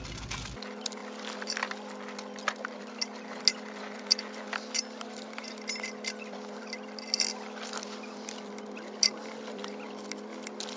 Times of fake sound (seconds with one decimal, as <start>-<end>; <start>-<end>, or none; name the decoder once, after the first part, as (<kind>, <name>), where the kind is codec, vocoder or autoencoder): none